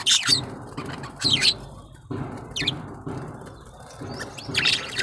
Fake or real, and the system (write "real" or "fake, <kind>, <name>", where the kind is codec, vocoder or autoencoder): fake, vocoder, BigVGAN v2